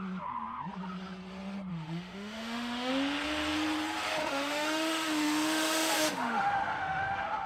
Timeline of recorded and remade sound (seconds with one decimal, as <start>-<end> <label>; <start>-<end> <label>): 0.0-1.7 recorded; 1.7-2.9 remade; 2.9-4.2 recorded; 4.2-7.5 remade

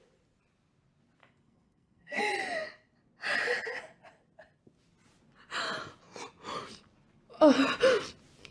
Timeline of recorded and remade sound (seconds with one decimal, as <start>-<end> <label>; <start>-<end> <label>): 0.0-1.2 recorded; 1.2-2.2 remade; 2.2-8.5 recorded